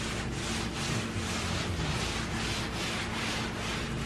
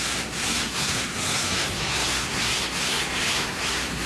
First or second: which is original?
first